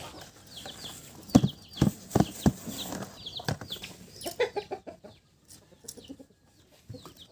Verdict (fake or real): real